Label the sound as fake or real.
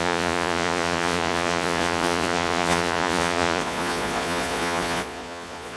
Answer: fake